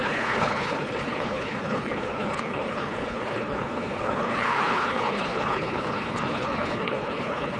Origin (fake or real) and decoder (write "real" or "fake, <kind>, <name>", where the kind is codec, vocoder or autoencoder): fake, codec, HILCodec